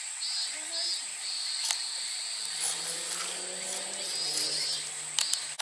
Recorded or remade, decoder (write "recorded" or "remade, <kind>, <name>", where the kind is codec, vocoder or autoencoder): recorded